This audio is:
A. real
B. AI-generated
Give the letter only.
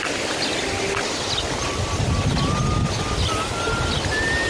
A